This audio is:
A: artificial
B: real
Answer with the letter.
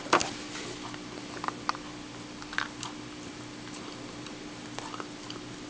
B